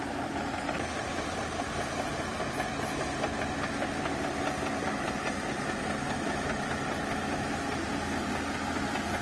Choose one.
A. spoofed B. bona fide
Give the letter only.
B